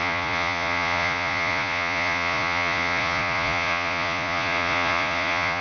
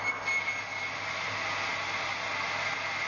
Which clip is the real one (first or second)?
second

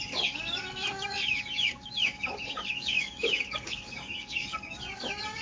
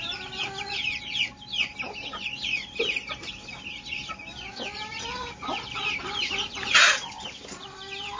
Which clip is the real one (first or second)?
second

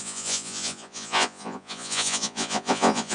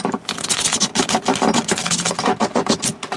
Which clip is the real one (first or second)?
second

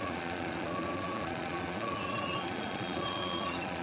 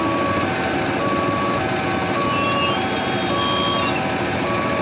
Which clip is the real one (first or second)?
second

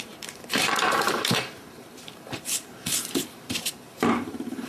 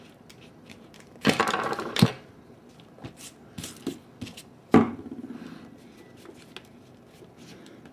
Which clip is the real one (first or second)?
second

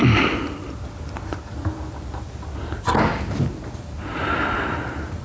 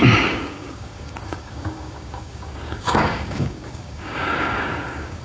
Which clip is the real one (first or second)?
first